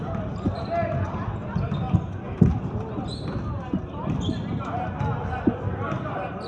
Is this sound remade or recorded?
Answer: recorded